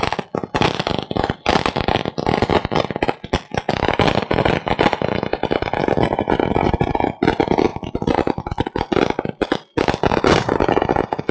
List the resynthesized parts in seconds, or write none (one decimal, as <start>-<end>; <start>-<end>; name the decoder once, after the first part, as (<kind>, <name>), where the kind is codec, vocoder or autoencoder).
5.3-6.9 (vocoder, BigVGAN v2); 7.7-10.7